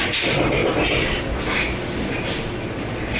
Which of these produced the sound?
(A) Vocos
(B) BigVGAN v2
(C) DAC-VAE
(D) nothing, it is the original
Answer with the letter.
D